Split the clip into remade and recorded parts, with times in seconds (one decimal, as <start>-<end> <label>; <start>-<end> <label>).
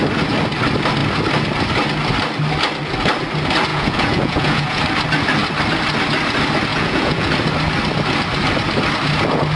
0.0-3.7 recorded; 3.7-4.8 remade; 4.8-6.7 recorded; 6.7-7.3 remade; 7.3-9.6 recorded